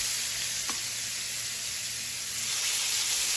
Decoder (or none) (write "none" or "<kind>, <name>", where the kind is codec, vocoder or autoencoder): none